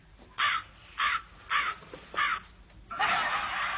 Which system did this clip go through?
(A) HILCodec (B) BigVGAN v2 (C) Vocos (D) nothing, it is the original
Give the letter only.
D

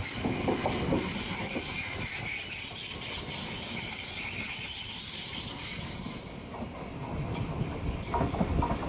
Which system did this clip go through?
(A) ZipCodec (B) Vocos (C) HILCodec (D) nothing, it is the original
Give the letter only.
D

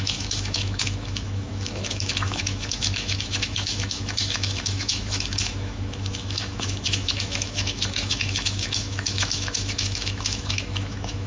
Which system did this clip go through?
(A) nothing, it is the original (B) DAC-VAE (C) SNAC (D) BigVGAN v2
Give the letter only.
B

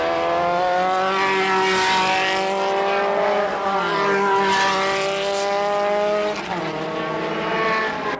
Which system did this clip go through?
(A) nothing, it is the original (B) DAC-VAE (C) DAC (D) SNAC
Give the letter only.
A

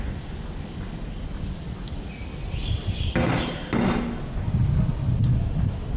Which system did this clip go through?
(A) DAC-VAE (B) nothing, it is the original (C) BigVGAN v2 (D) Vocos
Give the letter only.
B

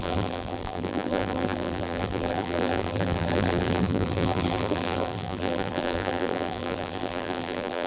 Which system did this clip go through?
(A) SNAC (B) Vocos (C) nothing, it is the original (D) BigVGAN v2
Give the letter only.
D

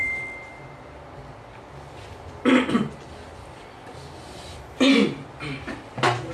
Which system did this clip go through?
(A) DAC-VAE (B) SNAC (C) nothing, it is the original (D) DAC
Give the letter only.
C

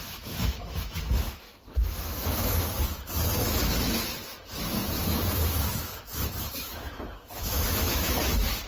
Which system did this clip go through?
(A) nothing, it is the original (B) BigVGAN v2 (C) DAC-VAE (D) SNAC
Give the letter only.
C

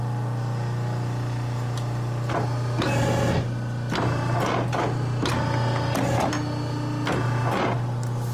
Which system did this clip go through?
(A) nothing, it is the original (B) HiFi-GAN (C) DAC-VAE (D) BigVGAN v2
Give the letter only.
A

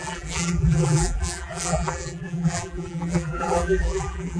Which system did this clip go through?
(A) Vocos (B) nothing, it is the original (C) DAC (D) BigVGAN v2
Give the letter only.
D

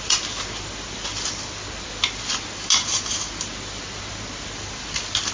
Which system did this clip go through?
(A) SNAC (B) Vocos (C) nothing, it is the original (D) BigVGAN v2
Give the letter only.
C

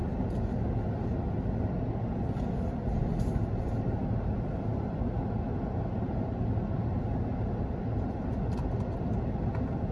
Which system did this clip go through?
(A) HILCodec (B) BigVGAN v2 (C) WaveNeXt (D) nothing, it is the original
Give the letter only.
D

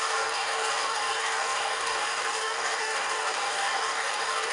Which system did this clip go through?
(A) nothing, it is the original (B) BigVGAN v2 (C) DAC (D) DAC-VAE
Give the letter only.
C